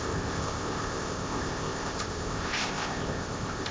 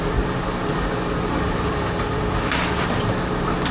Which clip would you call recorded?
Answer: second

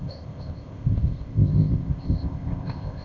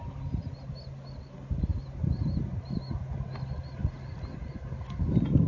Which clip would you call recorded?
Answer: second